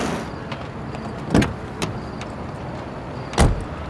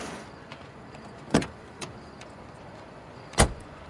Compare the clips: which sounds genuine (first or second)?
first